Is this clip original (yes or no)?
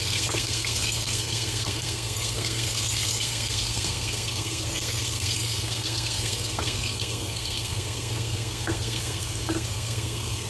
no